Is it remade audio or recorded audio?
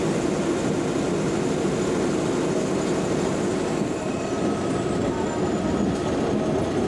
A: recorded